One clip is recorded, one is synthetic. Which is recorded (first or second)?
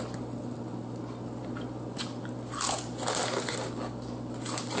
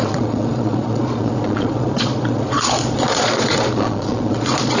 first